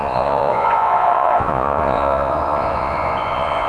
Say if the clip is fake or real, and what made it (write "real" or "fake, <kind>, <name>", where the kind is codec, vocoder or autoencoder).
fake, vocoder, Vocos